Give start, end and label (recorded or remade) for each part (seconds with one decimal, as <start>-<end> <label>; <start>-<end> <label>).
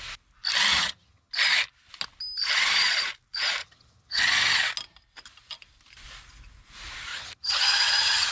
0.0-0.7 recorded; 0.7-1.3 remade; 1.3-3.6 recorded; 3.6-4.2 remade; 4.2-7.1 recorded; 7.1-8.3 remade